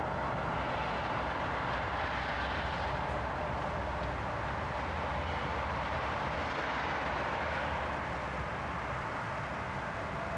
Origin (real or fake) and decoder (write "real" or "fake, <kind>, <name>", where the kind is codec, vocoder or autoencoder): real